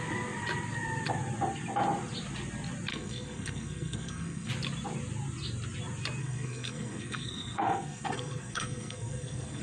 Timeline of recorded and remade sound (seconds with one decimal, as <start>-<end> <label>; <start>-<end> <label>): 0.0-2.9 recorded; 2.9-4.5 remade; 4.5-6.2 recorded; 6.2-9.6 remade